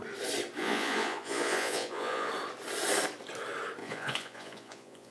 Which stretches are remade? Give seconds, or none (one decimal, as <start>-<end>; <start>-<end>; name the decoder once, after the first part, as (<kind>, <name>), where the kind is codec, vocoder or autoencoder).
0.6-2.3 (vocoder, Vocos); 3.8-5.1